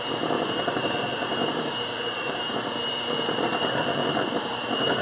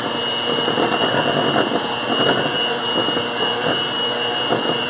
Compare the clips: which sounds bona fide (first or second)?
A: second